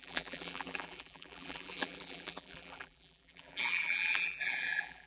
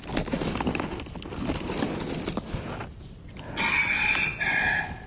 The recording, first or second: second